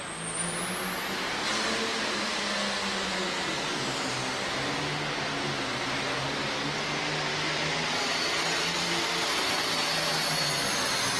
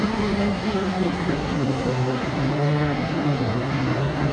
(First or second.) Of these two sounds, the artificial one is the second